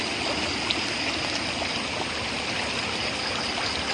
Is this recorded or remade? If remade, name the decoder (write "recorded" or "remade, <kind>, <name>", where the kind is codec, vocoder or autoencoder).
recorded